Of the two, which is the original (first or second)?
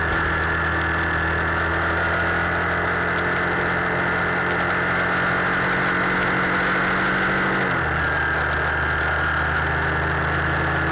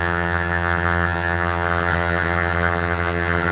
first